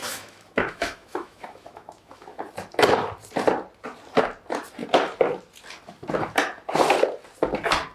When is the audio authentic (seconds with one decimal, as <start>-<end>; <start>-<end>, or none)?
2.4-7.9